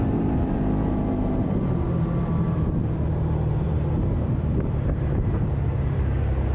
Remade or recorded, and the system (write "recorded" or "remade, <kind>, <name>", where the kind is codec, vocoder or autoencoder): remade, vocoder, BigVGAN v2